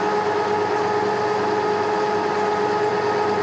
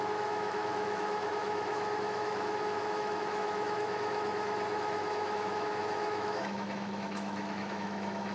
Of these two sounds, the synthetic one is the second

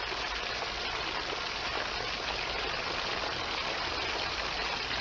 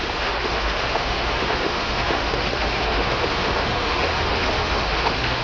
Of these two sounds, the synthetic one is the second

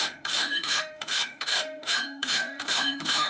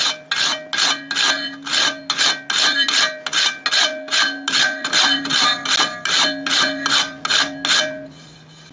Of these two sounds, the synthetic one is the first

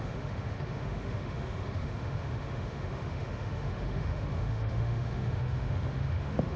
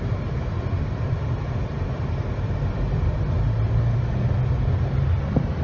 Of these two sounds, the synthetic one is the first